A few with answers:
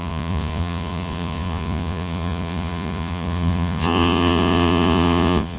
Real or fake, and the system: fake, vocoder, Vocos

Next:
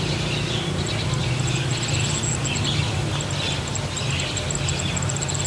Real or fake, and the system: real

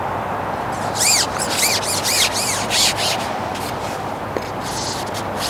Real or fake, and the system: real